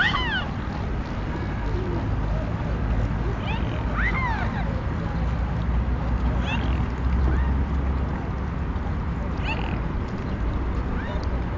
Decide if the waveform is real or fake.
real